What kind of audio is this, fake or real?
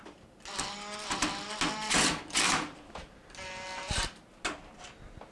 real